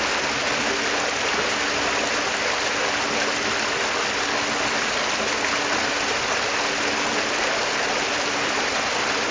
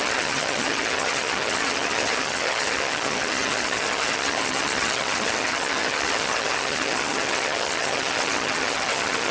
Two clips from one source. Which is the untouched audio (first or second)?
first